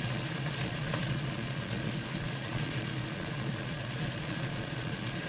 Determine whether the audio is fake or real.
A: fake